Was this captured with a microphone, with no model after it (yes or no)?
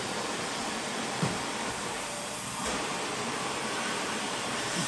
no